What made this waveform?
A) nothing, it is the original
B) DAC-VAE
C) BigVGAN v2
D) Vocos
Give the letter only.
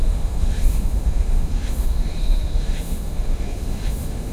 B